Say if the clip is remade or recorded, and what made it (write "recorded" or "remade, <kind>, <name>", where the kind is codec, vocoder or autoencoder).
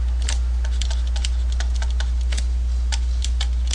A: recorded